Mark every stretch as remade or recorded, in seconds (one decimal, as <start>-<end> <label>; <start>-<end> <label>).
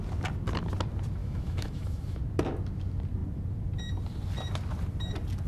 0.0-1.2 recorded; 1.2-2.2 remade; 2.2-5.5 recorded